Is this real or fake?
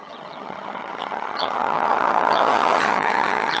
fake